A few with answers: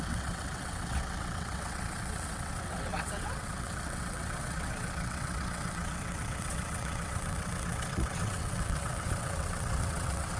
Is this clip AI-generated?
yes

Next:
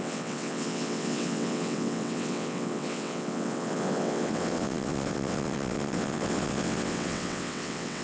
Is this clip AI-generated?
yes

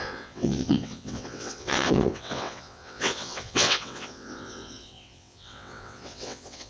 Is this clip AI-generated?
yes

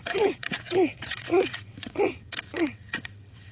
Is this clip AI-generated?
yes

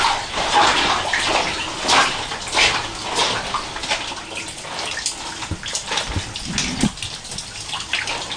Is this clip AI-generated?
no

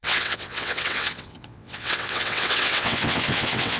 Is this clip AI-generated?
yes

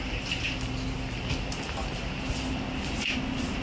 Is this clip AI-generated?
no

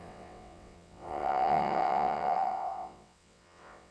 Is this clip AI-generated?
yes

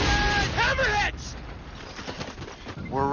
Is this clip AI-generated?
no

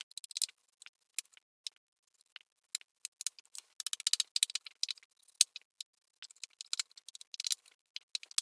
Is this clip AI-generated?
no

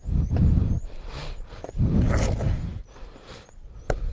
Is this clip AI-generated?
no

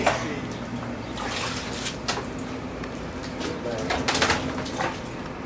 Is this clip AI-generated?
no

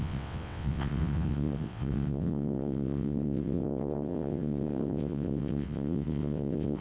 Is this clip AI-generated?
yes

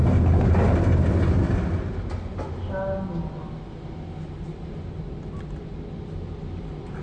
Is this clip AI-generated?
no